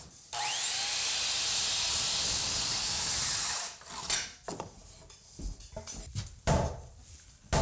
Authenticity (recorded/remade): recorded